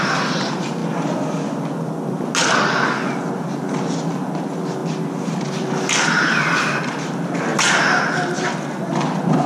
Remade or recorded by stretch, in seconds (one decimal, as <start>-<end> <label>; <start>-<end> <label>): 0.0-9.5 recorded